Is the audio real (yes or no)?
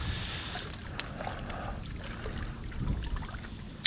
yes